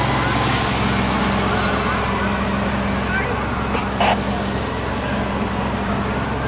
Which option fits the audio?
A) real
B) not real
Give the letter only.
A